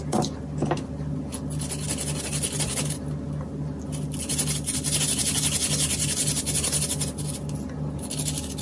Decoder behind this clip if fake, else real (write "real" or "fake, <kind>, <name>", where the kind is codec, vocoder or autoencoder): real